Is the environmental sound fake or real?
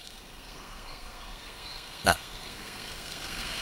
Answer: fake